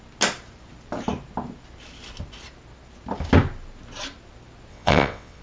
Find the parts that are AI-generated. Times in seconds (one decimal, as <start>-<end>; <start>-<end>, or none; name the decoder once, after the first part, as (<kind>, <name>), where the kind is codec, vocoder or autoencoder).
4.7-5.4 (vocoder, WaveNeXt)